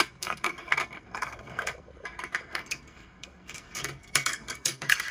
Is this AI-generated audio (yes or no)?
yes